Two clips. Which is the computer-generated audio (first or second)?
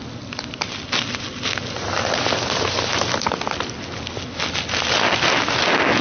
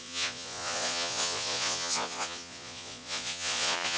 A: second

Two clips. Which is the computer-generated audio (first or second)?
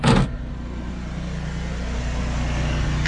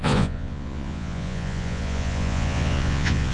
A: second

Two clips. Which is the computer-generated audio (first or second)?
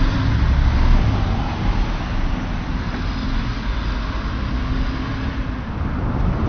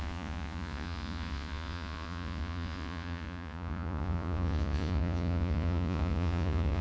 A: second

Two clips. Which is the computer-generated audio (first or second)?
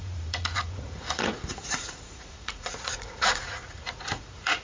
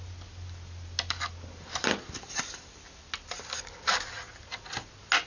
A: first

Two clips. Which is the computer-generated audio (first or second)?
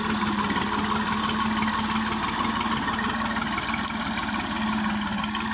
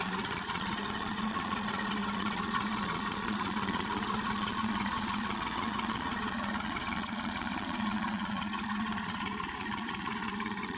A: second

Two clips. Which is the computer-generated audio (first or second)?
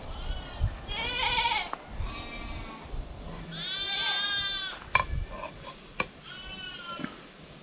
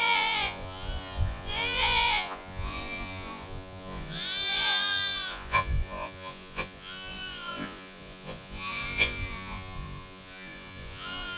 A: second